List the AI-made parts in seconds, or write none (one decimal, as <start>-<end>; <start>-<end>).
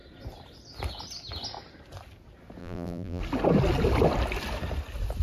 2.6-3.2